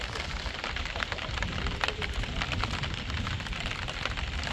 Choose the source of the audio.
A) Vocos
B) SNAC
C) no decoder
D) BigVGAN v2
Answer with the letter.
C